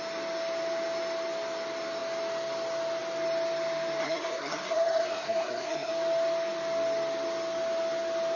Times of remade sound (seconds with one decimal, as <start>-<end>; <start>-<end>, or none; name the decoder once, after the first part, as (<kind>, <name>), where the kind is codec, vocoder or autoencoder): 4.0-5.9 (codec, SNAC)